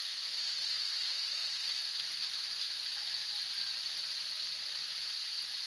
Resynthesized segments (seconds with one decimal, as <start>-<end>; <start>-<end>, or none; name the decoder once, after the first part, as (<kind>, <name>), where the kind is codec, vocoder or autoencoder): 0.0-3.1 (autoencoder, DAC-VAE)